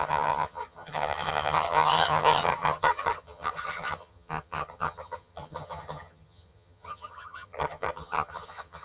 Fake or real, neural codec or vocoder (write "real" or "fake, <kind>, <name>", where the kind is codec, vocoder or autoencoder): fake, vocoder, HiFi-GAN